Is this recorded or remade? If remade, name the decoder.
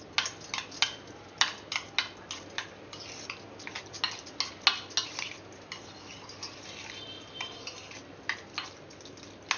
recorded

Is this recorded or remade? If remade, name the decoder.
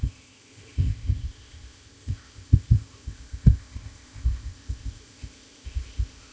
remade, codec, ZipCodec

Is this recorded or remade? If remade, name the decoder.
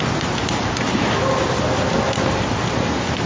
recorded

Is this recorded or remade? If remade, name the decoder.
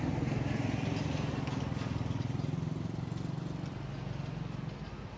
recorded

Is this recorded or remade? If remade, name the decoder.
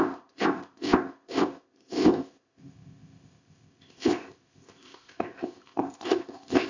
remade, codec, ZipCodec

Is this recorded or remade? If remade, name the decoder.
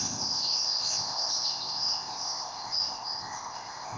remade, codec, ZipCodec